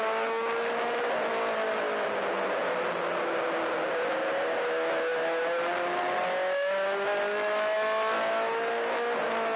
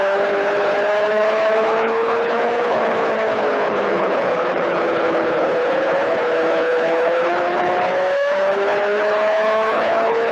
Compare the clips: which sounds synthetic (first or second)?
second